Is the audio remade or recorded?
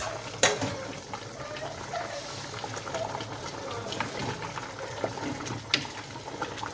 recorded